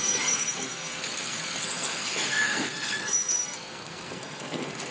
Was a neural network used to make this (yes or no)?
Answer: yes